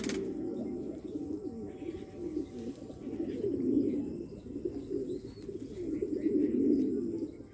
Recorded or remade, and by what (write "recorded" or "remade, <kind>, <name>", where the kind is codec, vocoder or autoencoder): recorded